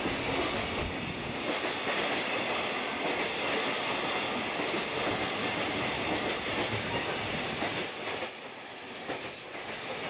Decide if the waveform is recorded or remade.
recorded